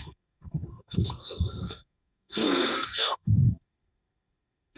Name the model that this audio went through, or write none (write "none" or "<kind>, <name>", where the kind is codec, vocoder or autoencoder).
codec, SNAC